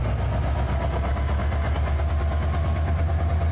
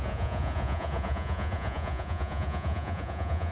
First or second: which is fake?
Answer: second